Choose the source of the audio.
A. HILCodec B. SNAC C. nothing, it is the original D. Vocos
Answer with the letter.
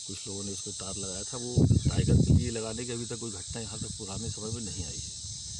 C